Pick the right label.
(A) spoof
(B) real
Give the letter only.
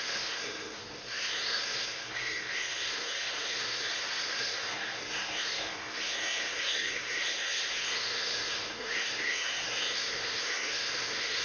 A